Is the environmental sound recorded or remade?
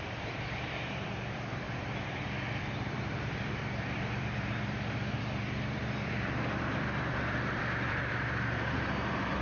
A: remade